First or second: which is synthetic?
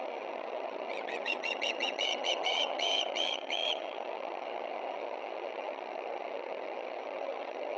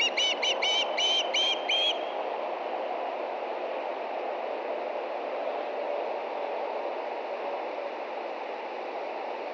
first